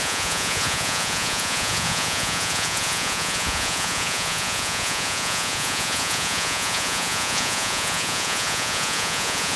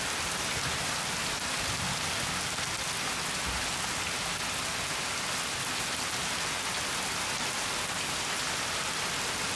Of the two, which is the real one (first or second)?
second